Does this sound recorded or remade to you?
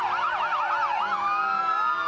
recorded